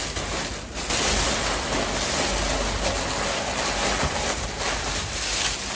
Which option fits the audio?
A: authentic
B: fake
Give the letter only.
A